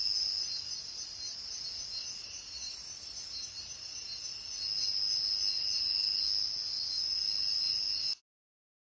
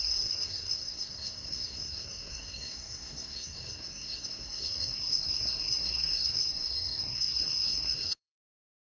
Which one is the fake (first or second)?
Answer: second